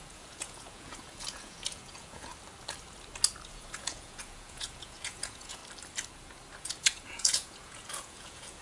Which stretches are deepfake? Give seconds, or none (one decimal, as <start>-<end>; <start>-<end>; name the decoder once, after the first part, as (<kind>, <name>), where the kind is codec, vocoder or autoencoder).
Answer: 0.0-2.3 (vocoder, Vocos); 3.5-5.6; 6.6-8.6